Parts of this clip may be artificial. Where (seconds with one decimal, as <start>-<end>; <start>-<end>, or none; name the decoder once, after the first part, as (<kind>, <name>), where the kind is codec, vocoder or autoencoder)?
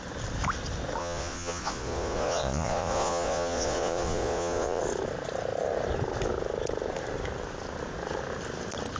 1.0-4.8 (vocoder, Vocos)